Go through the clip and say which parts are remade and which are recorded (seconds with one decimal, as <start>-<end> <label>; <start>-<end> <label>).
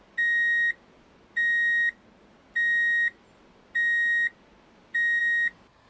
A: 0.0-5.9 recorded